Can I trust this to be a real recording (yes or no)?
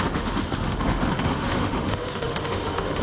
no